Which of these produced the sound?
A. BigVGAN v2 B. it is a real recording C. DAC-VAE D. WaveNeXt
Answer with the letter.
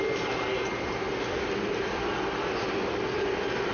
B